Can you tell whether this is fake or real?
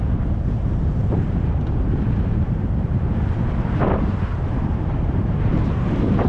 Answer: fake